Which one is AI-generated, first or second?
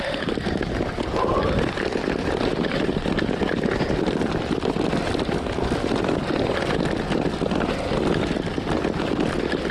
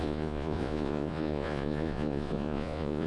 second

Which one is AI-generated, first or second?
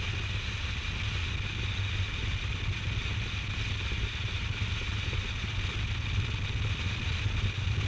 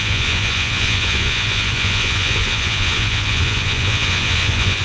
second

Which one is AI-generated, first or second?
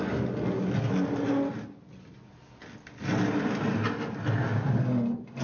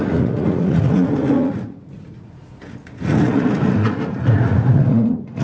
second